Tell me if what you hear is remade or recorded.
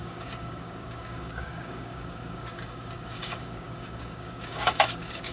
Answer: remade